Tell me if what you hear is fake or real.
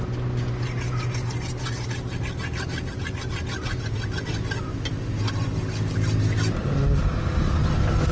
real